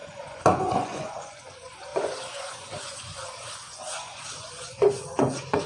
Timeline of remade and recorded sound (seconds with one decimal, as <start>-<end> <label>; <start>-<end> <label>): 0.0-5.7 remade